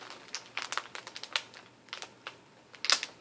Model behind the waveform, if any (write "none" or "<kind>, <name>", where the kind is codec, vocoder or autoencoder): none